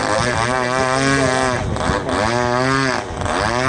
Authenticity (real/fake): real